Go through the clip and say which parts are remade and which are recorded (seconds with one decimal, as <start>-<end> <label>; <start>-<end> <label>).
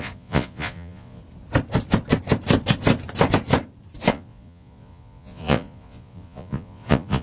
0.0-1.2 remade; 1.2-4.1 recorded; 4.1-7.2 remade